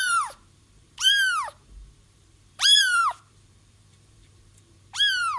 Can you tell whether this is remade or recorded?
remade